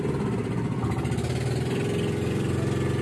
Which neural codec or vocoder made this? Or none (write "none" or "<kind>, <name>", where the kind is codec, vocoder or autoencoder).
none